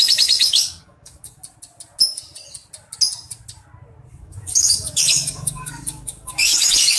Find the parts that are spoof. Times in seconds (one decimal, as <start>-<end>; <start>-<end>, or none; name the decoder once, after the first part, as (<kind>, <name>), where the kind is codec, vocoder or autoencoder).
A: 0.0-1.4 (codec, DAC); 4.2-7.0